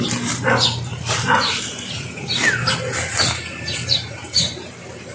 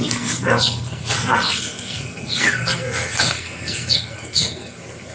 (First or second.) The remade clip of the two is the second